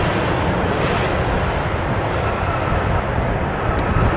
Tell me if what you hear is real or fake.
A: real